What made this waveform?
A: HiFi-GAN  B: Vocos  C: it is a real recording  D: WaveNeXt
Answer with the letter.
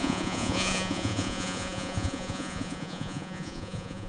B